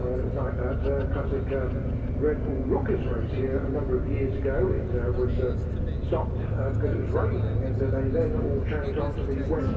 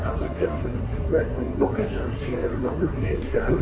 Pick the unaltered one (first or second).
first